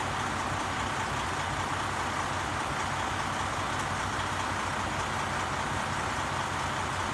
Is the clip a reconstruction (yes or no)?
no